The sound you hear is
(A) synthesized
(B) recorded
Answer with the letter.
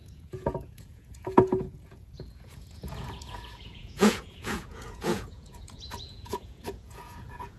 A